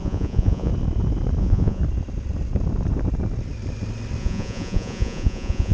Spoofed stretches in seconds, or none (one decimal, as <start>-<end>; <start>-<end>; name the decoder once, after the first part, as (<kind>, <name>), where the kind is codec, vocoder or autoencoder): 0.0-0.7 (vocoder, Vocos); 1.4-1.8; 4.2-5.7